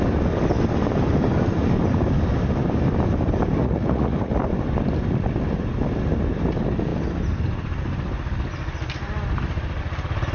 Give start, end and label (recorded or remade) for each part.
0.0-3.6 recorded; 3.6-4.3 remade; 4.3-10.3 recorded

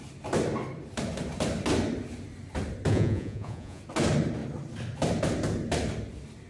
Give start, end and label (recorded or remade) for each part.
0.0-2.9 recorded; 2.9-3.8 remade; 3.8-6.5 recorded

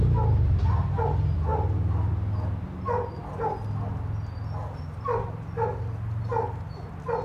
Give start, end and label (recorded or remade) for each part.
0.0-7.2 recorded

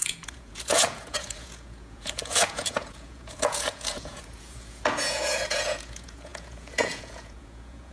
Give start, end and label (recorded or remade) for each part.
0.0-7.9 remade

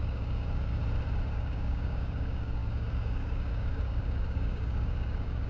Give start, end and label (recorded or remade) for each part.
0.0-0.8 remade; 0.8-1.3 recorded; 1.3-5.5 remade

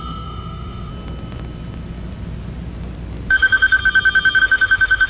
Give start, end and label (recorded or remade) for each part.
0.0-0.9 remade; 0.9-3.3 recorded; 3.3-3.8 remade; 3.8-4.4 recorded; 4.4-5.1 remade

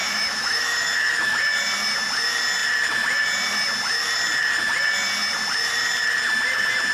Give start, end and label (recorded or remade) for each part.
0.0-1.4 remade; 1.4-6.9 recorded